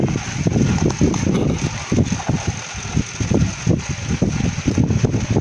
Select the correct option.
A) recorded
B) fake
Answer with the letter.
A